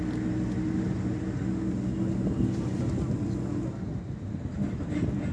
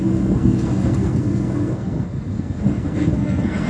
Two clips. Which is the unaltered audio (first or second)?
first